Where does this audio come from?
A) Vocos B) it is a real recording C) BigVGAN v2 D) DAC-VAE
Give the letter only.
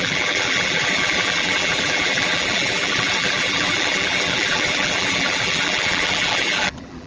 C